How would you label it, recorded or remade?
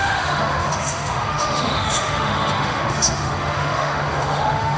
remade